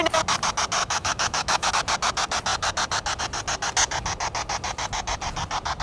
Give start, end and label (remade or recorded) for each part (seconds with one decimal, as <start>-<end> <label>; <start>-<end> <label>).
0.0-0.8 recorded; 0.8-1.7 remade; 1.7-5.8 recorded